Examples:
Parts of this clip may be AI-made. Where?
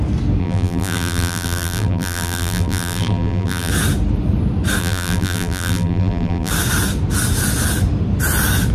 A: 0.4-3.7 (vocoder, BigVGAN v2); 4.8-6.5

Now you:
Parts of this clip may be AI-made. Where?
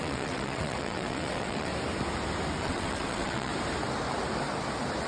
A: 0.0-1.7 (vocoder, WaveNeXt); 2.6-3.5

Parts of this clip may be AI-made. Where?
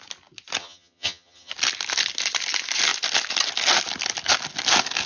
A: 0.6-1.5 (vocoder, HiFi-GAN)